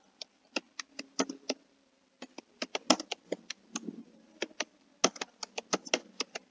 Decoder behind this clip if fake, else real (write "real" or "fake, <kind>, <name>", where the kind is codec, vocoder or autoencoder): real